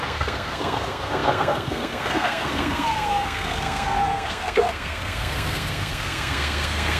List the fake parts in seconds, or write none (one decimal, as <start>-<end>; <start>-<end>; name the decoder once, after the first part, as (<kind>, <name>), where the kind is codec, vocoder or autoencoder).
0.0-7.0 (codec, SNAC)